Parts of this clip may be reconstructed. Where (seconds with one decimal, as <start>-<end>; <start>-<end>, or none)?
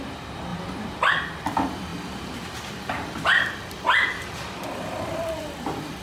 0.0-6.0